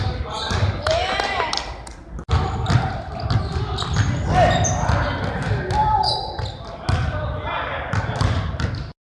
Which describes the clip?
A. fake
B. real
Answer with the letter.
B